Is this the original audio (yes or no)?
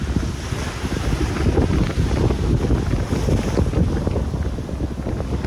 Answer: yes